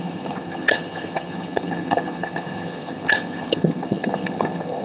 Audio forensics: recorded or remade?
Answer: remade